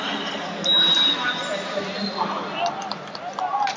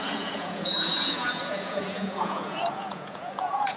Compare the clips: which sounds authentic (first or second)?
first